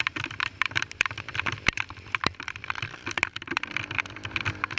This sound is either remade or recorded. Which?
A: remade